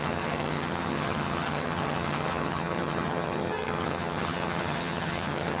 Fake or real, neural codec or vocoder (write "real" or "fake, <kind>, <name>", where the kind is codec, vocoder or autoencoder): fake, vocoder, HiFi-GAN